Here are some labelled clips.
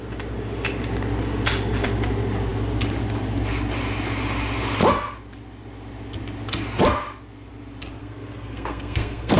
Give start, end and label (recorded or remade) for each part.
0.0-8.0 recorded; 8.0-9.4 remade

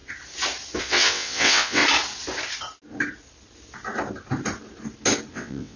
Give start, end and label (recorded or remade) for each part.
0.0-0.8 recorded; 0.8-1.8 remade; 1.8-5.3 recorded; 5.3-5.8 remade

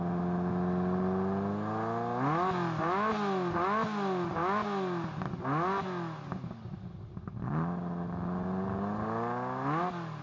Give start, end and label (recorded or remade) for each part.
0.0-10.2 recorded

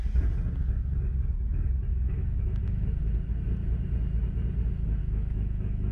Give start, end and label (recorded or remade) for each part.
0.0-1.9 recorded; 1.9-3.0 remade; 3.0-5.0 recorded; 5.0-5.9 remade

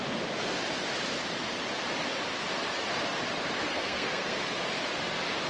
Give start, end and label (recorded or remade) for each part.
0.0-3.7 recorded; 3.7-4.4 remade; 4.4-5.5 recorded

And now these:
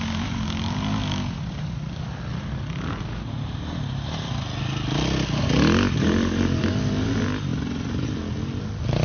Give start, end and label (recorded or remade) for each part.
0.0-9.0 recorded